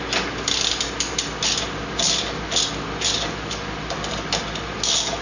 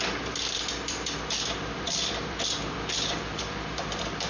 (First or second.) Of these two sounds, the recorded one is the first